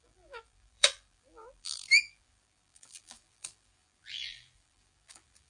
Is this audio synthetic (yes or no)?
yes